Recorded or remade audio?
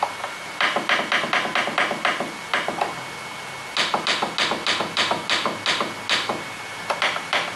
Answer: recorded